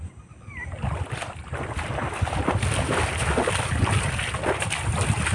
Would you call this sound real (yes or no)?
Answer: yes